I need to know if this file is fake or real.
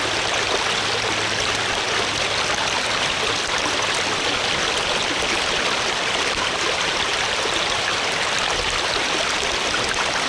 real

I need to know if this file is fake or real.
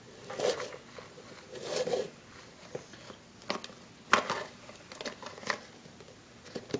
real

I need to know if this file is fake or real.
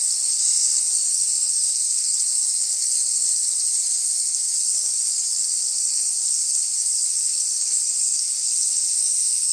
fake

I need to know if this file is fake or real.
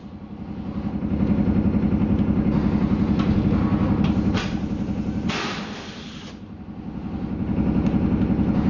real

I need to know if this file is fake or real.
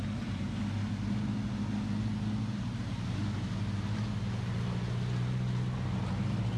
real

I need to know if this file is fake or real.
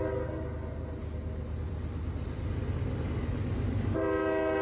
real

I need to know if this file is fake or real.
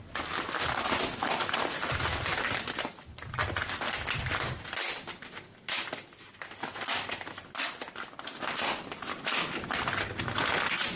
real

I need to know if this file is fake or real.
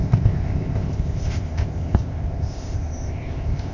fake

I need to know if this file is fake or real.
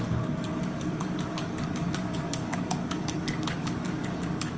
fake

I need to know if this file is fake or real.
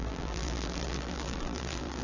fake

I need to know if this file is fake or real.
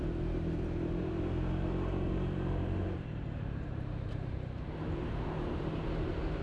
fake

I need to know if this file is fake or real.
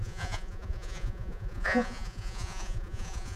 fake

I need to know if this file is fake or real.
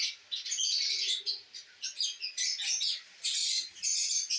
real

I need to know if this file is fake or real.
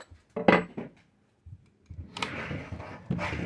real